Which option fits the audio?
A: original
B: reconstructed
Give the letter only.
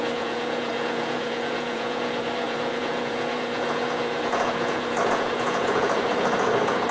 B